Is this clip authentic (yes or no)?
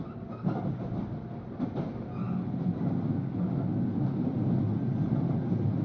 yes